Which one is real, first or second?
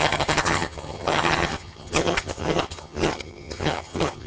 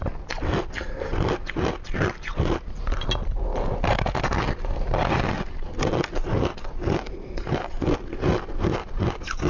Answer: second